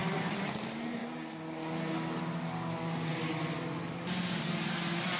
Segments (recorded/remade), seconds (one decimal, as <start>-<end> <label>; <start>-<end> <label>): 0.0-1.0 remade; 1.0-3.1 recorded; 3.1-5.2 remade